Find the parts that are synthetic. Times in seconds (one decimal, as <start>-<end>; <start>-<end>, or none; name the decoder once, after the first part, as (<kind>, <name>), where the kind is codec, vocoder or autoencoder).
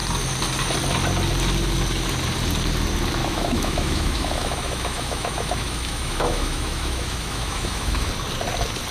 3.2-8.1 (autoencoder, DAC-VAE)